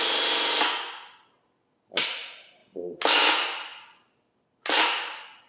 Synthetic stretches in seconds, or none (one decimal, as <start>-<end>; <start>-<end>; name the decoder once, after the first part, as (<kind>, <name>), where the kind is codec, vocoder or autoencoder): none

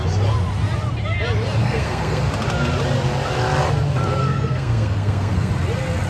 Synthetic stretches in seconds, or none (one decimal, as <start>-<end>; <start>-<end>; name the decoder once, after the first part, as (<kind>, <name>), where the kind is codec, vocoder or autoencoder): 1.6-2.2 (codec, SNAC); 4.2-5.5

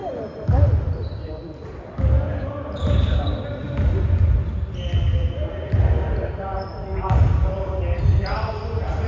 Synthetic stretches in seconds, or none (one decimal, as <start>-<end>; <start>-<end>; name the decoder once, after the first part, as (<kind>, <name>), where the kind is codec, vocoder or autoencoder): none

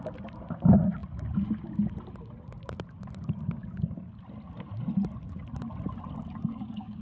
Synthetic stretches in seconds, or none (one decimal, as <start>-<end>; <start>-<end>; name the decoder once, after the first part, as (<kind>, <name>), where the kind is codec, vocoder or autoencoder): 6.5-7.0 (codec, DAC)

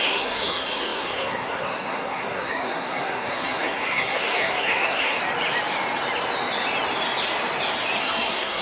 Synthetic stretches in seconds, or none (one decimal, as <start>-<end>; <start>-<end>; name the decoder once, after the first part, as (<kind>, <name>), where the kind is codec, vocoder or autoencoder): 0.0-5.2 (codec, SNAC); 8.0-8.6

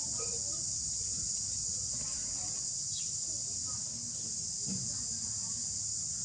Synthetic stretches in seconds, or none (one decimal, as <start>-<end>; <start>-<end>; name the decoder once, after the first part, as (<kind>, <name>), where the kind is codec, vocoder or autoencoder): none

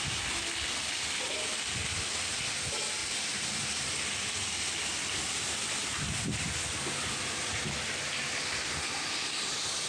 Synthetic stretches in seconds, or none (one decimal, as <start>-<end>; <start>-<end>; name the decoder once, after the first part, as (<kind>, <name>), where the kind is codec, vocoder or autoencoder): 3.0-4.3 (vocoder, BigVGAN v2)

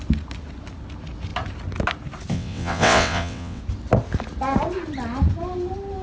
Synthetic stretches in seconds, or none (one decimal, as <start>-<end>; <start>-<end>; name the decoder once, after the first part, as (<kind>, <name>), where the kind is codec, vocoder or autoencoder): 2.3-3.6 (vocoder, WaveNeXt)